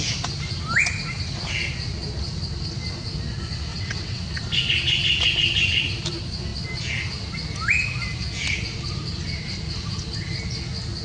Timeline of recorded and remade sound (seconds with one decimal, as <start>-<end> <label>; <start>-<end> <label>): 0.0-3.7 recorded; 3.7-4.2 remade; 4.2-11.0 recorded